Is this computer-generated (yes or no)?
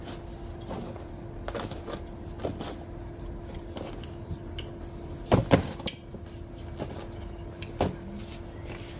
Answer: no